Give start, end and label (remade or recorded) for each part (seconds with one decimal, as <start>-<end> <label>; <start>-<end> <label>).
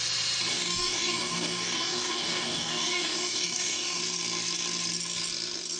0.0-0.5 recorded; 0.5-4.0 remade; 4.0-5.8 recorded